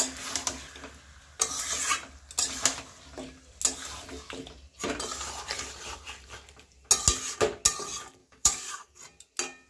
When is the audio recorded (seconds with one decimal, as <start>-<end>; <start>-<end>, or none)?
0.0-8.2; 9.0-9.7